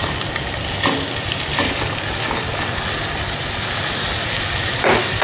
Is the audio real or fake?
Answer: real